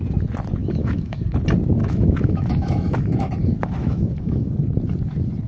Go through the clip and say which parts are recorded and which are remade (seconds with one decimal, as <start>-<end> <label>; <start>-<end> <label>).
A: 0.0-0.6 recorded; 0.6-1.2 remade; 1.2-1.8 recorded; 1.8-3.3 remade; 3.3-3.8 recorded; 3.8-4.5 remade; 4.5-5.5 recorded